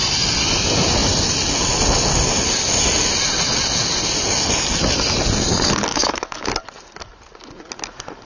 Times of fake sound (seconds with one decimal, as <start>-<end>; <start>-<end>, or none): 5.9-6.5